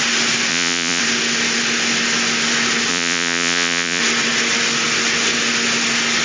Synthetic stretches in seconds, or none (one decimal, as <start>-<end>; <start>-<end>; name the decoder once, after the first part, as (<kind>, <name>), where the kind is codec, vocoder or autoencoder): 0.5-1.0 (vocoder, Vocos); 2.9-4.0